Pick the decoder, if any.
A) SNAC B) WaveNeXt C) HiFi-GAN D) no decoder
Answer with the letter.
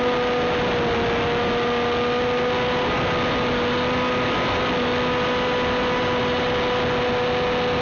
D